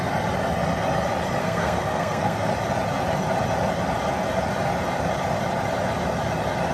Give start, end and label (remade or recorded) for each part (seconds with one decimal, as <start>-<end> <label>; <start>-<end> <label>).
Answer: 0.0-1.4 recorded; 1.4-2.5 remade; 2.5-6.7 recorded